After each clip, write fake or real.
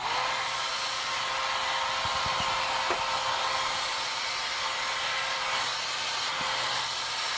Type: real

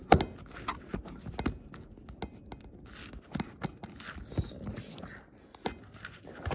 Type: real